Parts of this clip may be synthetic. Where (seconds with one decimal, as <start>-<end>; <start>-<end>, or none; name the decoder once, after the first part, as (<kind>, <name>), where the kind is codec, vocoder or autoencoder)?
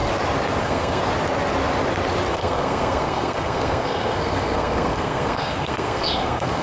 0.6-1.0 (codec, SNAC); 2.3-6.6